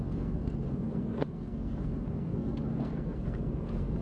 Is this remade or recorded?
remade